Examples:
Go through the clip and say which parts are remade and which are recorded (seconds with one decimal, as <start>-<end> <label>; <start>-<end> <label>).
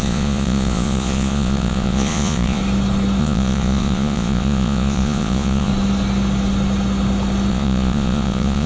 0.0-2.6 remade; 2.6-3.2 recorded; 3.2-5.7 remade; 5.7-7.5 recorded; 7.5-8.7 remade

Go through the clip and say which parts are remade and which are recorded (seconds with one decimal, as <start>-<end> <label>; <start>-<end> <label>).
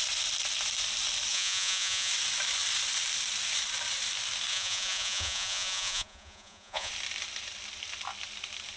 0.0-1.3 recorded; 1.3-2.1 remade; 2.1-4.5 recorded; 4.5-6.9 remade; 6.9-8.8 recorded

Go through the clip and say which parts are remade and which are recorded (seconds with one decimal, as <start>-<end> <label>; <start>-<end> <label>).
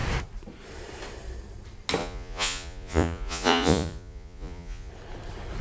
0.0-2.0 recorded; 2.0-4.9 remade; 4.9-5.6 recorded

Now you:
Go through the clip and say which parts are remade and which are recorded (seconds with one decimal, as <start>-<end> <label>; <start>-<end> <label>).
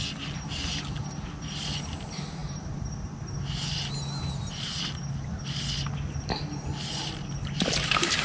0.0-8.2 recorded